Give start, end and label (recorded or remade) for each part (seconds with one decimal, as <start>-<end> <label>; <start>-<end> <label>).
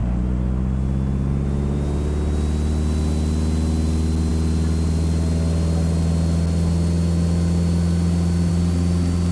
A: 0.0-9.3 recorded